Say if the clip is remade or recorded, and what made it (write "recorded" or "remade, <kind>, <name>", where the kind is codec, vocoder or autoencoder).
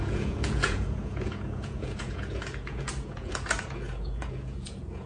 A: remade, vocoder, Vocos